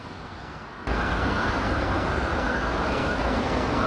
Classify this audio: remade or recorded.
remade